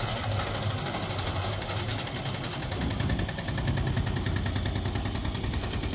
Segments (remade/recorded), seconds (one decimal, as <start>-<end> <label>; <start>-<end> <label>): 0.0-5.9 recorded